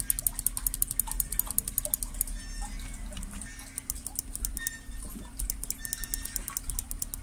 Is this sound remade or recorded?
recorded